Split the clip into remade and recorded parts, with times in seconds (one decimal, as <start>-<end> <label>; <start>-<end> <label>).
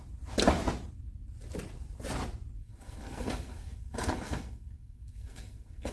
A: 0.0-2.6 recorded; 2.6-5.9 remade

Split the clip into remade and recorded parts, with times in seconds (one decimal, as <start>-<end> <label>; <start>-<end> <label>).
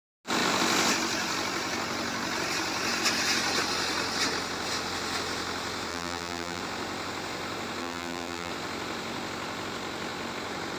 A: 0.0-5.9 recorded; 5.9-6.6 remade; 6.6-7.8 recorded; 7.8-8.5 remade; 8.5-10.8 recorded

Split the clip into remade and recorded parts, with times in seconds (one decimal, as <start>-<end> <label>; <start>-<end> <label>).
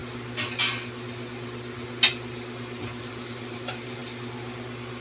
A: 0.0-3.0 recorded; 3.0-4.0 remade; 4.0-5.0 recorded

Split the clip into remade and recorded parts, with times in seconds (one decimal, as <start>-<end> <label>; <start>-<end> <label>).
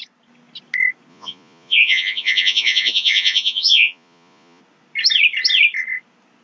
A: 0.0-1.1 recorded; 1.1-4.6 remade; 4.6-6.4 recorded